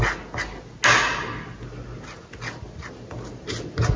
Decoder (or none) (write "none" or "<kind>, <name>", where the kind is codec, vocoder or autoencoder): none